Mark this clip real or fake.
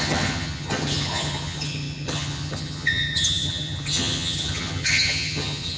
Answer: fake